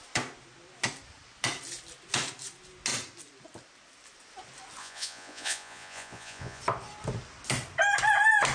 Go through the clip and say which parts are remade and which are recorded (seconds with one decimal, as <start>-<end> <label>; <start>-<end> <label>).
0.0-4.8 recorded; 4.8-6.6 remade; 6.6-8.5 recorded